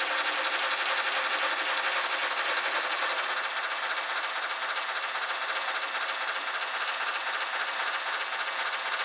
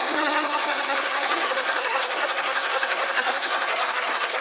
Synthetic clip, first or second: second